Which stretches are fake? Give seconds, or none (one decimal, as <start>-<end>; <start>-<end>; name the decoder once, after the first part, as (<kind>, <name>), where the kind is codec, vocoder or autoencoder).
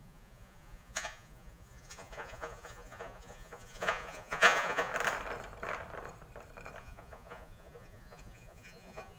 0.0-4.9 (vocoder, Vocos); 6.8-9.2